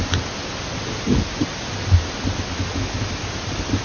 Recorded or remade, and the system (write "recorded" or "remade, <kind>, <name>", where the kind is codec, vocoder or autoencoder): recorded